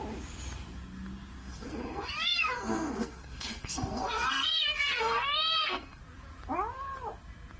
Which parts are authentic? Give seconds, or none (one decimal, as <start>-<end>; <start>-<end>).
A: 0.0-1.4; 6.0-7.6